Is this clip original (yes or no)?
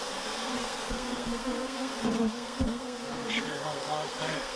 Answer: no